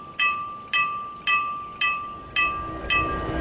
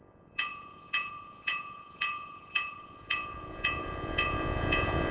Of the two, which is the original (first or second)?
first